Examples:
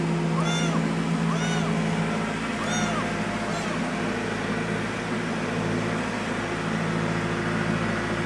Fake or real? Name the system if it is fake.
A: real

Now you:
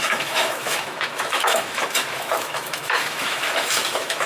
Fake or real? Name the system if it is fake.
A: fake, autoencoder, DAC-VAE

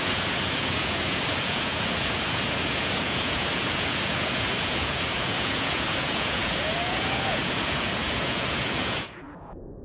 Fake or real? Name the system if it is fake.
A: fake, vocoder, Vocos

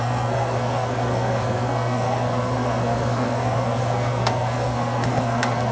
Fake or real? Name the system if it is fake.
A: fake, codec, SNAC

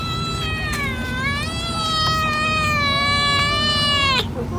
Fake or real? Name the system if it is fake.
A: real